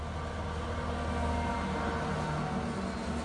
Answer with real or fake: real